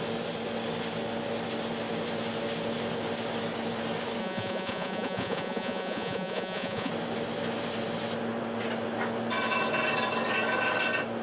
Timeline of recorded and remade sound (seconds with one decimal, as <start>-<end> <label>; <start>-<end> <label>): 0.0-4.2 recorded; 4.2-6.9 remade; 6.9-11.2 recorded